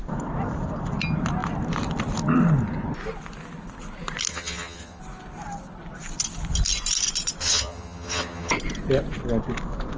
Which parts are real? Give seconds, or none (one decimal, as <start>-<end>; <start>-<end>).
0.0-4.3; 5.0-7.4; 8.5-10.0